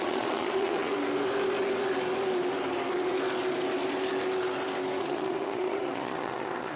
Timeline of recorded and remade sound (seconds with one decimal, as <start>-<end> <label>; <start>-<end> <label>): 0.0-0.9 remade; 0.9-5.0 recorded; 5.0-6.8 remade